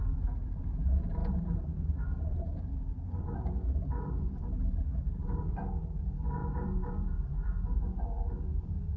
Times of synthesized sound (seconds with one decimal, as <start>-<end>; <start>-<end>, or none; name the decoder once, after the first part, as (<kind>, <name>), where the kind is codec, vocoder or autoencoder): 0.0-9.0 (vocoder, BigVGAN v2)